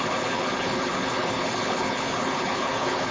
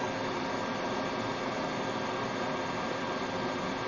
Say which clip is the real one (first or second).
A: second